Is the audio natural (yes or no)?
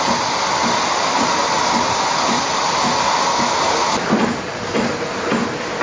yes